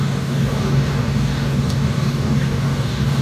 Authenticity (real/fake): fake